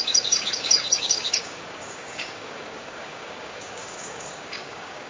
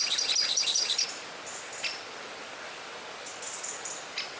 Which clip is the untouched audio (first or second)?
second